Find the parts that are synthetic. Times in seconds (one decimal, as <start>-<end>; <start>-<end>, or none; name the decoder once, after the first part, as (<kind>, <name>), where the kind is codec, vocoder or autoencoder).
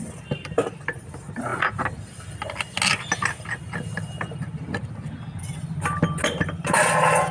none